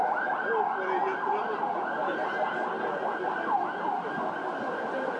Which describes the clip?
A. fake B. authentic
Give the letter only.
B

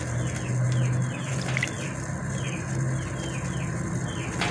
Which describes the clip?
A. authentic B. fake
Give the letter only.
A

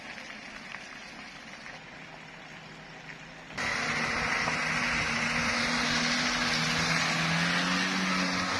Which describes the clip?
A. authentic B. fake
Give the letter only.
A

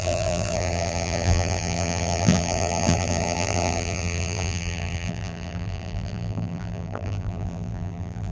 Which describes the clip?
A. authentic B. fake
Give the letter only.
B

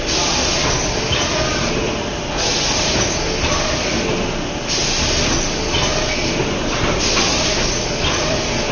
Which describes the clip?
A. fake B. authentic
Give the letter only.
B